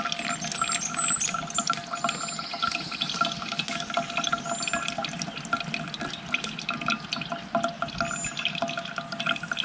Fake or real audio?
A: real